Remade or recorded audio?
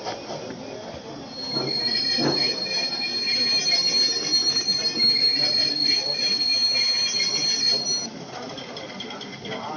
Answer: recorded